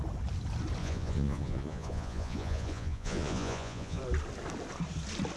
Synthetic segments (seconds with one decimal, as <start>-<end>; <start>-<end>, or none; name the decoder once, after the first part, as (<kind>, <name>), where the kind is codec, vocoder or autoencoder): 0.8-4.0 (vocoder, Vocos)